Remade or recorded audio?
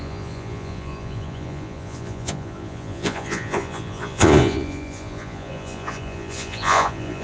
remade